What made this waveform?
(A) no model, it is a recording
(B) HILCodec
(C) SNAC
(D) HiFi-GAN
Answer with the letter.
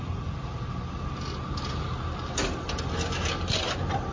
A